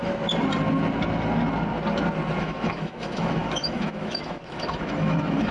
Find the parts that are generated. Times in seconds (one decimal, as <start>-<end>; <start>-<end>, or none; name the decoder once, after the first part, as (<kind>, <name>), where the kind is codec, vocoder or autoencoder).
2.4-5.5 (autoencoder, DAC-VAE)